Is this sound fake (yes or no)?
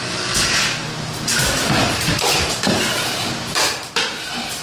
no